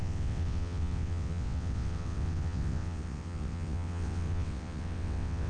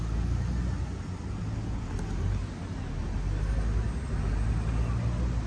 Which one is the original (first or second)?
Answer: second